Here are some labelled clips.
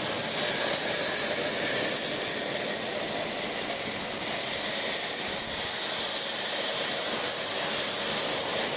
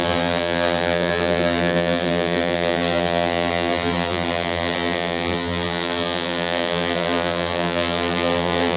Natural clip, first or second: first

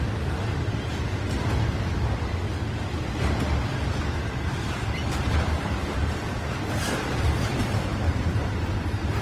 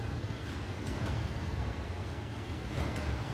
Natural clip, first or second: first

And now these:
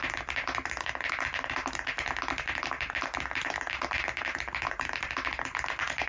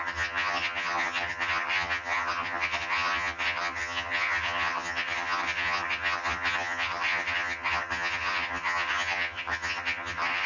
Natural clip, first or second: first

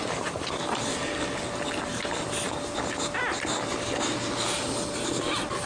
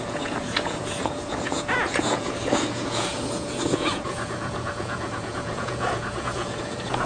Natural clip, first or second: first